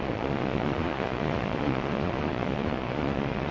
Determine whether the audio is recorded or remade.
remade